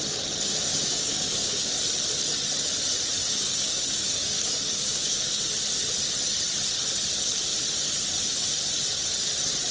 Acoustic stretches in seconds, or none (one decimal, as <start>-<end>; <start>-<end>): 0.0-0.7; 1.7-3.2; 5.4-9.7